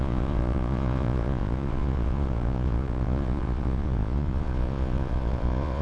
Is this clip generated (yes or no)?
yes